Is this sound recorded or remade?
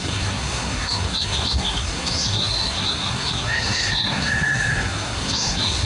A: remade